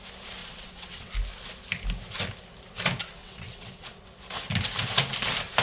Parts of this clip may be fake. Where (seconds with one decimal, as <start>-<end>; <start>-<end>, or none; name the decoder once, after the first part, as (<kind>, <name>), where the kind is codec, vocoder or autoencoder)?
0.4-1.1 (vocoder, WaveNeXt); 3.2-4.0